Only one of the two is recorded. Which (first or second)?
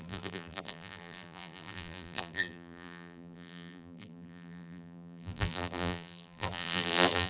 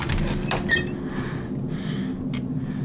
second